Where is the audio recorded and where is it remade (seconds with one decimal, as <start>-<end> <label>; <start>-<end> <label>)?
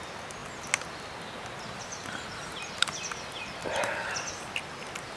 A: 0.0-5.2 recorded